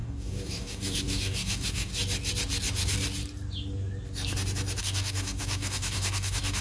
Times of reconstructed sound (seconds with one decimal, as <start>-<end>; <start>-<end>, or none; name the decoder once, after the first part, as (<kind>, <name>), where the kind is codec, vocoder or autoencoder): 0.0-1.9 (codec, DAC); 4.8-6.6